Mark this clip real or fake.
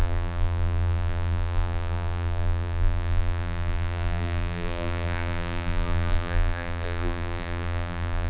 fake